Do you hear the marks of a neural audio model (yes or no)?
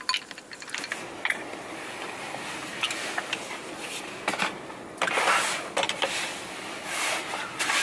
no